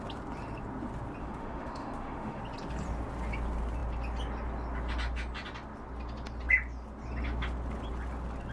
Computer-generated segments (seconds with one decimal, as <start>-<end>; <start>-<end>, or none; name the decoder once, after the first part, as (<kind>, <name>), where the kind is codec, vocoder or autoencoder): 1.2-2.4 (autoencoder, DAC-VAE)